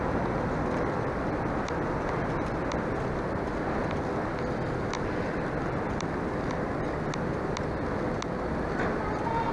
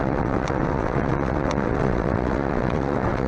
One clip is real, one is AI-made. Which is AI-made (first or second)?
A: second